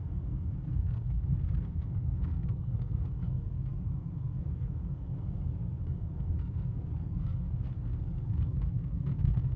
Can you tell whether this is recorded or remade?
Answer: remade